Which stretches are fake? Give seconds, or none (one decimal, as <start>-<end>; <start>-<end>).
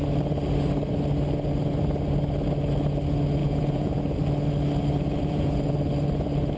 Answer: 3.4-4.0; 5.2-5.7